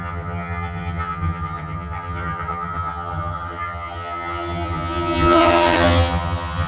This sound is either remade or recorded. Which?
remade